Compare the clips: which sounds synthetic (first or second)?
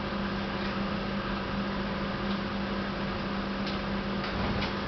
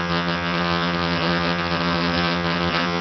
second